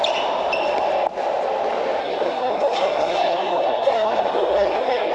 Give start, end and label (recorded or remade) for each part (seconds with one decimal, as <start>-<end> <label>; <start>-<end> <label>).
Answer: 0.0-2.0 recorded; 2.0-5.1 remade